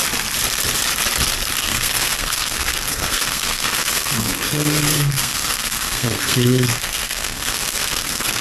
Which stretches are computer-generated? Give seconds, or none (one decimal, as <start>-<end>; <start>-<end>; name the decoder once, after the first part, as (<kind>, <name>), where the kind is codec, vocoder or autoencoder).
1.6-8.4 (codec, SNAC)

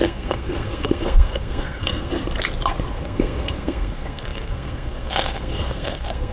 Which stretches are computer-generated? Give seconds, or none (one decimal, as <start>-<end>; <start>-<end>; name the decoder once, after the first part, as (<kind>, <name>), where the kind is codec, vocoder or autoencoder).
0.0-2.1 (codec, SNAC); 2.9-6.3